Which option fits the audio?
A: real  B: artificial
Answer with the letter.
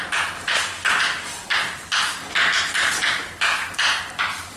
A